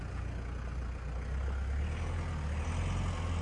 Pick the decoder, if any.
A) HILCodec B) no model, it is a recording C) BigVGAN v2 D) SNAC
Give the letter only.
B